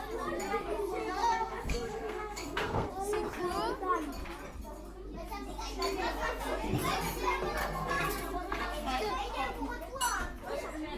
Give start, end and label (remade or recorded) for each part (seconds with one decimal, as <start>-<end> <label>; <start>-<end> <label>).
0.0-1.0 recorded; 1.0-2.9 remade; 2.9-7.6 recorded; 7.6-9.1 remade; 9.1-11.0 recorded